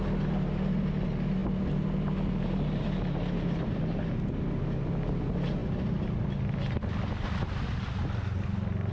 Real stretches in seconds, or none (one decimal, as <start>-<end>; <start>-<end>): 0.0-8.9